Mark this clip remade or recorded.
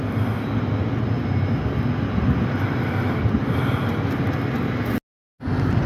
recorded